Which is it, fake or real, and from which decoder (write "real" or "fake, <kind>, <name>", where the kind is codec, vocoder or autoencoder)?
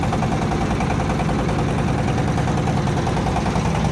real